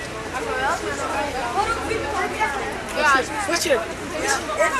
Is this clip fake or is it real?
real